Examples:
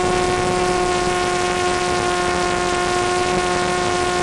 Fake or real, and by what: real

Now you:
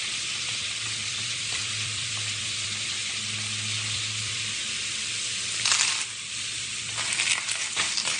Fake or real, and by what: fake, vocoder, BigVGAN v2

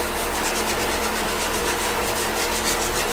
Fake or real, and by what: fake, codec, DAC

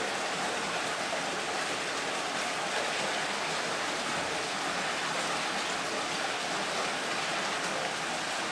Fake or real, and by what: real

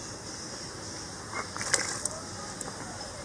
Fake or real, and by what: real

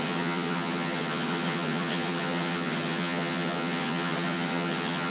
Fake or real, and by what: fake, vocoder, HiFi-GAN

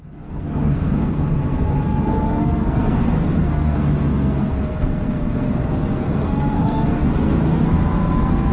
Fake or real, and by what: fake, codec, SNAC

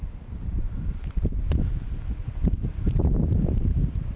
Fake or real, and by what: real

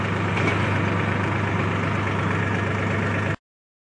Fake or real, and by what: real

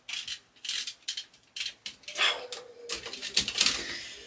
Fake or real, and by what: real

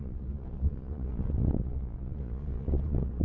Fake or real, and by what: fake, vocoder, Vocos